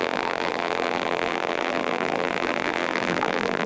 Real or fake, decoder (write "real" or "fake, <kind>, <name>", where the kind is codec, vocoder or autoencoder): fake, vocoder, BigVGAN v2